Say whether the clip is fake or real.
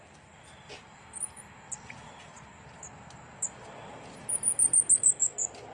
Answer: real